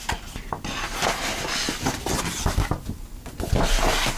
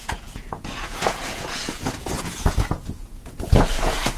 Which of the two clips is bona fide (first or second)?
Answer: first